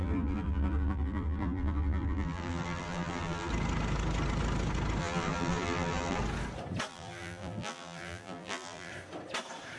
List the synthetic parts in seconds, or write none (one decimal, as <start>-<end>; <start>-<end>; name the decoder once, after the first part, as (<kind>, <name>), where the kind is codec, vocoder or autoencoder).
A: 0.0-3.5 (vocoder, BigVGAN v2); 5.0-6.2; 6.9-8.9